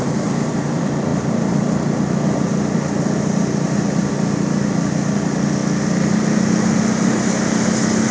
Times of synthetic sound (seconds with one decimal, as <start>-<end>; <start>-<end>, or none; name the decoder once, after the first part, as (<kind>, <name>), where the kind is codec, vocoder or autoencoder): none